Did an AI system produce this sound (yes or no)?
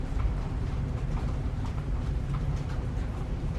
yes